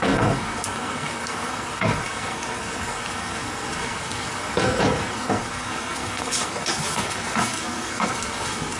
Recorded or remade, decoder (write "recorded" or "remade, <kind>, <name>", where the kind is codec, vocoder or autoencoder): remade, codec, SNAC